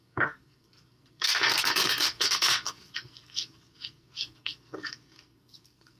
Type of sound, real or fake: fake